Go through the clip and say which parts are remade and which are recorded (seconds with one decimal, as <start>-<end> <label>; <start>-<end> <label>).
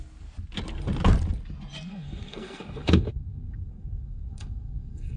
0.0-1.9 recorded; 1.9-5.2 remade